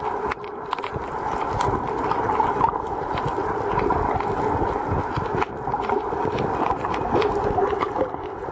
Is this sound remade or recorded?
recorded